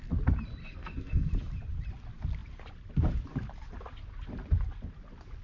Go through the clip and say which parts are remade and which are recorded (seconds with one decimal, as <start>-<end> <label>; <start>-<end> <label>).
0.0-0.6 recorded; 0.6-1.3 remade; 1.3-5.4 recorded